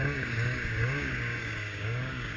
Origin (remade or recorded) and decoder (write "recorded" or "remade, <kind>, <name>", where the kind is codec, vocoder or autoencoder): remade, codec, DAC